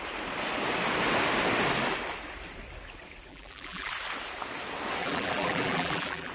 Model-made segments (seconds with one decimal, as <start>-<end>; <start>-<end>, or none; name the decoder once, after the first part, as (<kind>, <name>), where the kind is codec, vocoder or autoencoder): 3.3-3.9 (vocoder, BigVGAN v2); 5.0-6.3